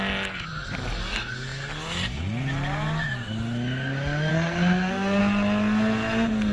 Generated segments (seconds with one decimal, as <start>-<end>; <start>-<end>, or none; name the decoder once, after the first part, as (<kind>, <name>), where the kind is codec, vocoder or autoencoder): 4.3-5.2 (codec, SNAC)